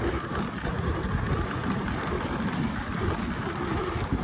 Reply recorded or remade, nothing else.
recorded